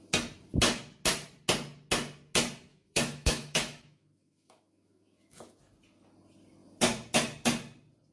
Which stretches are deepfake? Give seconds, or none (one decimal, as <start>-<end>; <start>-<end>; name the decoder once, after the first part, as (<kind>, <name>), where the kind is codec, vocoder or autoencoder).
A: 2.7-5.6 (autoencoder, DAC-VAE)